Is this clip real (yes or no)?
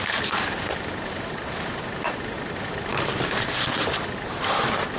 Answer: no